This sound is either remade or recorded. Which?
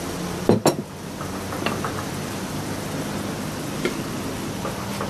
recorded